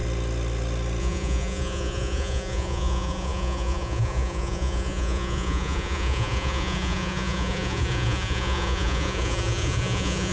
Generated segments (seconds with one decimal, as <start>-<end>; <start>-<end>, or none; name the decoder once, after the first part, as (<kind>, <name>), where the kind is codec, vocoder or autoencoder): 1.0-10.3 (vocoder, Vocos)